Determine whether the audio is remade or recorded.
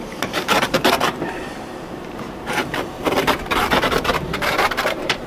remade